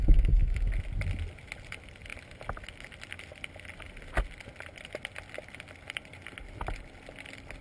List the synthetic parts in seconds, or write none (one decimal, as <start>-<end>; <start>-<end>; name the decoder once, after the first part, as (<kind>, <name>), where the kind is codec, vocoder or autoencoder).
0.0-0.7 (autoencoder, DAC-VAE)